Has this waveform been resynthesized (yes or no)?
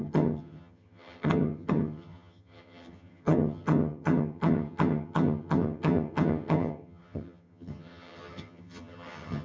yes